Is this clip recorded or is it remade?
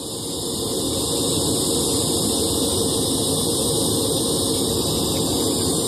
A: recorded